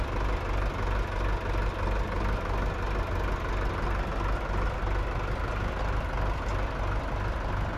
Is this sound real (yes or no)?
yes